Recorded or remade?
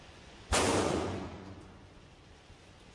remade